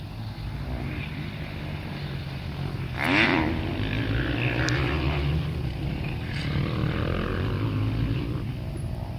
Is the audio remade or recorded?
recorded